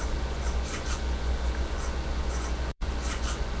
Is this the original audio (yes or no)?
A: no